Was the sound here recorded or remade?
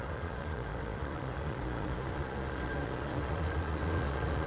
remade